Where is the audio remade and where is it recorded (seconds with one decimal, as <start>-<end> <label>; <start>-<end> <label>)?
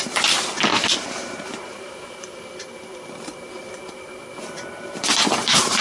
0.0-0.7 recorded; 0.7-3.5 remade; 3.5-5.8 recorded